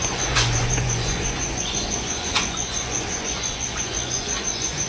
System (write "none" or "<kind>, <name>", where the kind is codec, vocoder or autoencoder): vocoder, Vocos